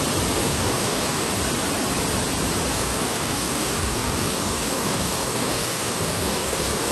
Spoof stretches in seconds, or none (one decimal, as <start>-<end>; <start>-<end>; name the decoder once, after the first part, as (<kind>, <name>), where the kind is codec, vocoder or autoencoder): 0.4-1.3 (codec, DAC); 2.7-6.9